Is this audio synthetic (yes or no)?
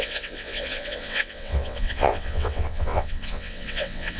yes